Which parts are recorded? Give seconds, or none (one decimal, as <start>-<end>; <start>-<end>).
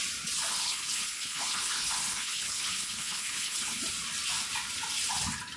0.0-0.5; 3.8-5.6